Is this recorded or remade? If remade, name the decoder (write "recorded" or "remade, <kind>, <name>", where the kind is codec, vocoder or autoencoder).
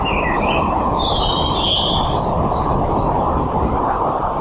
remade, vocoder, BigVGAN v2